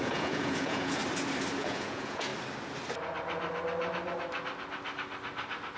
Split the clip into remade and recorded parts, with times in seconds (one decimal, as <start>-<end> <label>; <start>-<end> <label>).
0.0-1.0 remade; 1.0-1.6 recorded; 1.6-2.3 remade; 2.3-5.8 recorded

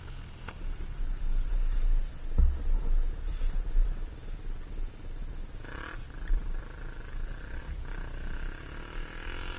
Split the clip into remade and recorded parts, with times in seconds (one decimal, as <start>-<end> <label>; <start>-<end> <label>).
0.0-3.3 recorded; 3.3-4.1 remade; 4.1-5.2 recorded; 5.2-7.6 remade; 7.6-9.6 recorded

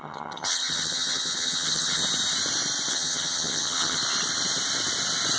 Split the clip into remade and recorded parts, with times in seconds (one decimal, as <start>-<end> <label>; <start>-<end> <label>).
0.0-2.0 remade; 2.0-2.9 recorded; 2.9-4.0 remade; 4.0-5.4 recorded

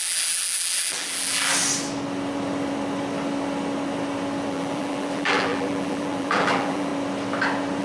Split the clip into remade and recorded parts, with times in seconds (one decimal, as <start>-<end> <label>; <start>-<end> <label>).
0.0-1.5 remade; 1.5-4.5 recorded; 4.5-6.9 remade; 6.9-7.8 recorded